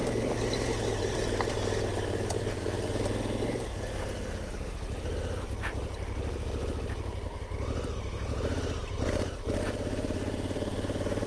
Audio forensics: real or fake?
fake